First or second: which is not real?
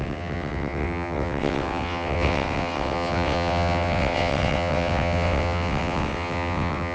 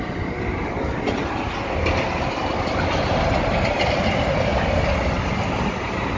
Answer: first